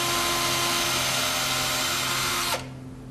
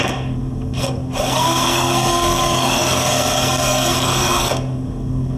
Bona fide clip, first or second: first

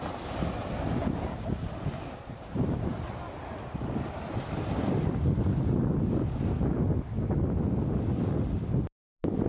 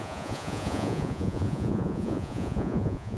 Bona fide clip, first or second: first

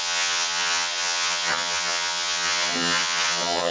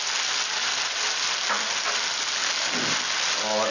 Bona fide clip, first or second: second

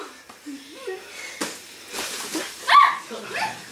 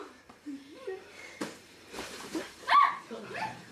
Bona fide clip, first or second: first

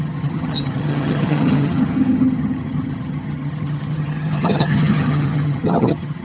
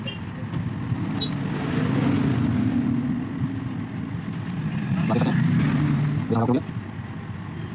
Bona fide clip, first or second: second